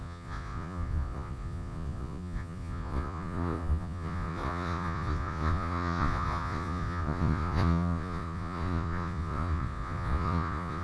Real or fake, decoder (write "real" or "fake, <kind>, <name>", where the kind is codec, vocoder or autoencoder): fake, vocoder, Vocos